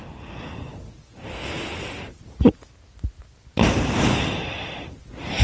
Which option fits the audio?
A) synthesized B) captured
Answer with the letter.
B